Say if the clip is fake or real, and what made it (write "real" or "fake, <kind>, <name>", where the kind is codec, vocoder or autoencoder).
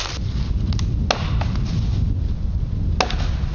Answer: real